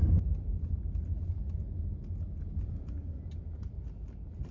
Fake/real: real